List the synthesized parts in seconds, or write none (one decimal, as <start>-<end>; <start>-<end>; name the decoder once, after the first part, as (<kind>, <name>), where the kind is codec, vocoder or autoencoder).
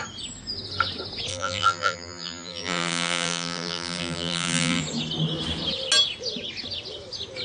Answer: 1.3-4.8 (vocoder, BigVGAN v2)